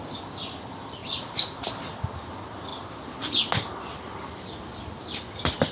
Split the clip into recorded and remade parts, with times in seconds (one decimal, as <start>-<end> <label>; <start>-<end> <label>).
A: 0.0-1.0 recorded; 1.0-1.7 remade; 1.7-5.7 recorded